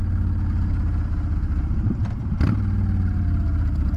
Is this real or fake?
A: real